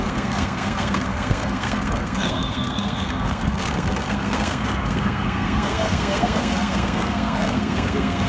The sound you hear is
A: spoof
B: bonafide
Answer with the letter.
A